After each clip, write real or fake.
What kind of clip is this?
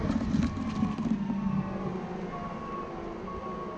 real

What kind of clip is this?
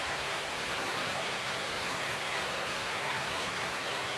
fake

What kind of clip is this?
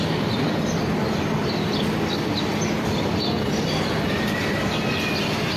real